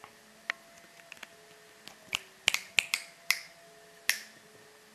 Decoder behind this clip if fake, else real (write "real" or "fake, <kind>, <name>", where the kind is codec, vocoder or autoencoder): real